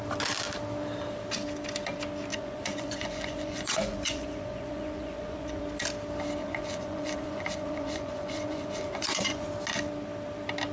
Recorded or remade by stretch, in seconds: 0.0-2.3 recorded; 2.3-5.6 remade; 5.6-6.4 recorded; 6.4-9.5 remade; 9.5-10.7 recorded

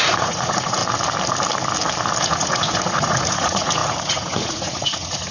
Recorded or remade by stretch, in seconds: 0.0-0.8 remade; 0.8-2.2 recorded; 2.2-5.3 remade

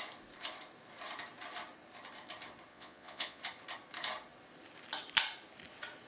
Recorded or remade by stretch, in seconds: 0.0-2.7 recorded; 2.7-3.4 remade; 3.4-6.1 recorded

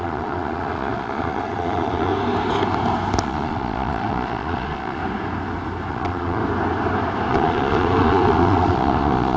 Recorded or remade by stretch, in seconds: 0.0-2.1 remade; 2.1-3.2 recorded; 3.2-5.0 remade; 5.0-5.9 recorded; 5.9-6.4 remade; 6.4-7.3 recorded; 7.3-9.4 remade

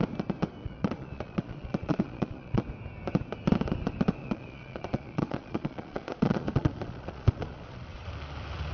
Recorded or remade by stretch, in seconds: 0.0-0.6 recorded; 0.6-2.6 remade; 2.6-4.2 recorded; 4.2-8.1 remade; 8.1-8.7 recorded

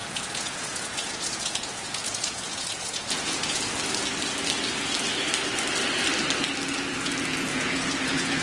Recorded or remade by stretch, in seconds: 0.0-3.6 remade; 3.6-7.5 recorded; 7.5-8.4 remade

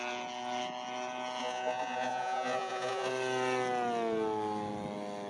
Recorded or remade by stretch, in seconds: 0.0-1.4 recorded; 1.4-3.1 remade; 3.1-5.3 recorded